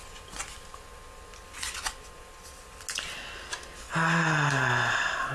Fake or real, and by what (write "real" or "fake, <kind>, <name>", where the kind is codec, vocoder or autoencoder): real